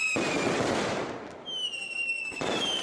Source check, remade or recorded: recorded